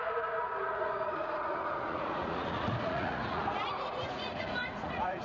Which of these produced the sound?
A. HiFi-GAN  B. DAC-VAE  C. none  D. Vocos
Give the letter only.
D